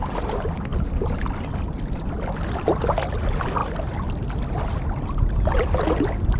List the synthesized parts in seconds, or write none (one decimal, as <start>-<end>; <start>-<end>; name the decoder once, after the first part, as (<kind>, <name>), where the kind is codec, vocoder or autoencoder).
none